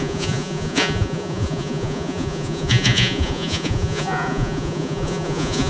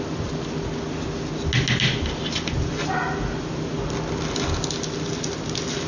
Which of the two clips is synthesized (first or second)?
first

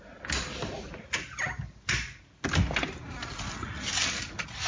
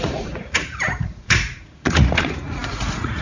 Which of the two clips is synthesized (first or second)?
second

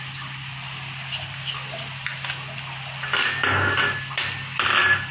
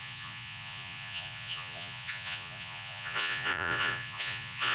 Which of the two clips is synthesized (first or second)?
second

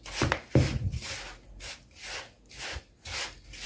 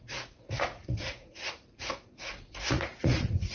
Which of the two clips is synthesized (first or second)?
second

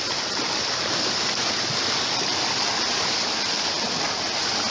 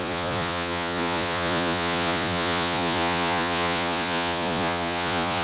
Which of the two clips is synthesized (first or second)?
second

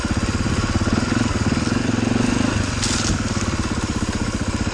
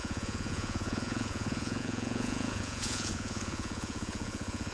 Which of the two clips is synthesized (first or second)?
second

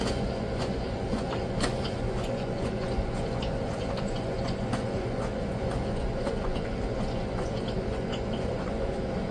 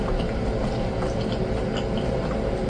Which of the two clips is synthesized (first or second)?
first